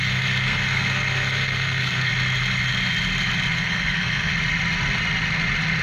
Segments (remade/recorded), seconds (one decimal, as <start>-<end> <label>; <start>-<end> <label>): 0.0-2.1 remade; 2.1-3.5 recorded; 3.5-4.3 remade; 4.3-5.8 recorded